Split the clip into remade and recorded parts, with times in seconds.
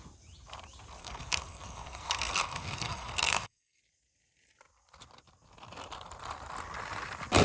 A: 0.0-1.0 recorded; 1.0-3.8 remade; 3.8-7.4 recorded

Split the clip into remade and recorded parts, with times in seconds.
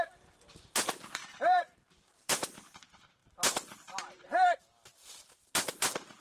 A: 0.0-1.2 recorded; 1.2-2.8 remade; 2.8-3.2 recorded; 3.2-4.6 remade; 4.6-6.2 recorded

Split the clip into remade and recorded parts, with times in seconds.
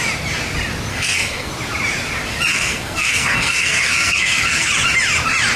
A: 0.0-0.9 recorded; 0.9-1.5 remade; 1.5-2.5 recorded; 2.5-4.7 remade; 4.7-5.6 recorded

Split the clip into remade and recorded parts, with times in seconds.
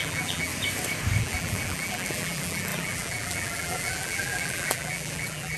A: 0.0-0.5 remade; 0.5-1.2 recorded; 1.2-5.6 remade